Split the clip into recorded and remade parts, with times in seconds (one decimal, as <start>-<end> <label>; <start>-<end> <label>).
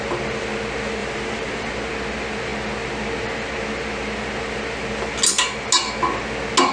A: 0.0-1.0 recorded; 1.0-1.7 remade; 1.7-6.7 recorded